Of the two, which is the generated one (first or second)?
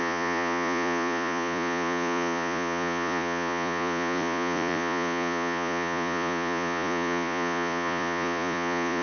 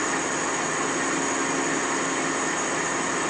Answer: first